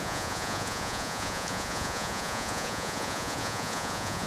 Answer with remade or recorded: remade